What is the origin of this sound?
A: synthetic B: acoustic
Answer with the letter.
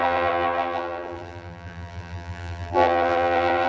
A